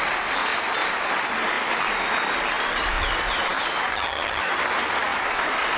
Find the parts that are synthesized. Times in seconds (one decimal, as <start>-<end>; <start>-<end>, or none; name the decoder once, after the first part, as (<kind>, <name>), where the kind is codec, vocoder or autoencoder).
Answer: 3.9-4.4 (vocoder, HiFi-GAN)